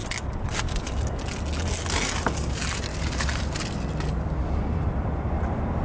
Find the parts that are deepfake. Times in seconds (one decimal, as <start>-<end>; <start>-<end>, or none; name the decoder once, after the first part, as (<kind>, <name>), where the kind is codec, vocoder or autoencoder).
2.9-3.5 (vocoder, BigVGAN v2)